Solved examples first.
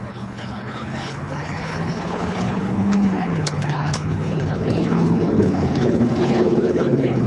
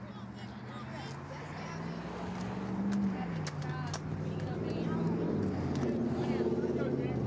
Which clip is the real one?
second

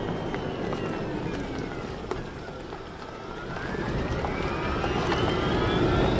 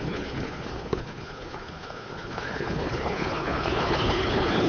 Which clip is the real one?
first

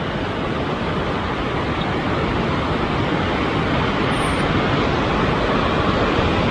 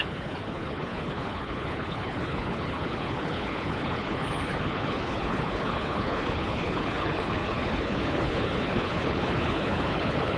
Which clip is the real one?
first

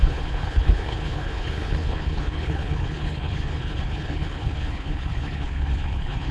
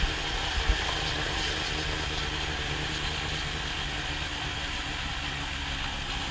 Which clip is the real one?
second